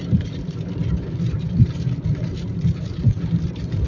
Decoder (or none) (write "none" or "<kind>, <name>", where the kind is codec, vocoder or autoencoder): vocoder, BigVGAN v2